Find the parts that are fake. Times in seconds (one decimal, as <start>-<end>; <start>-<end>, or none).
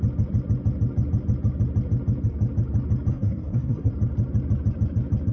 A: 3.1-3.9